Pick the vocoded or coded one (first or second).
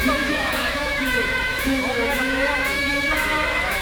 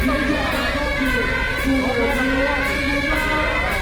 first